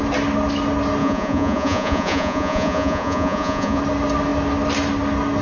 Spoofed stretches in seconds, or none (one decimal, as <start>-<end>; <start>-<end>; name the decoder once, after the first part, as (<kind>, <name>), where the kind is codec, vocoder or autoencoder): 1.0-3.8 (vocoder, Vocos)

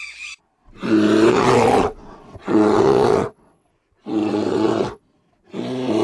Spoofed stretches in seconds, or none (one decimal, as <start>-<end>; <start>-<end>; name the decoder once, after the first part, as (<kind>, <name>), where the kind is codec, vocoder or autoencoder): 1.3-3.7 (vocoder, WaveNeXt); 4.2-5.0

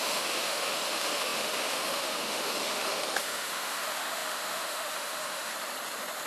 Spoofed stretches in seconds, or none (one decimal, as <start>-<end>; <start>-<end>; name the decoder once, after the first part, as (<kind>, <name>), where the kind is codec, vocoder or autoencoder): 0.0-5.5 (autoencoder, DAC-VAE)

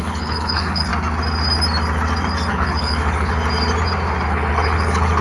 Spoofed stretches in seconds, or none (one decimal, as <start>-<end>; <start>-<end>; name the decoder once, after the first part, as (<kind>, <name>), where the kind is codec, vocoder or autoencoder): 0.0-0.9 (codec, HILCodec); 2.5-3.4; 4.3-5.2